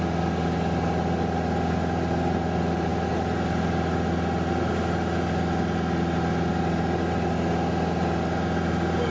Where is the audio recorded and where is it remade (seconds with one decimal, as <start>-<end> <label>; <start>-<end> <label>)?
0.0-9.1 recorded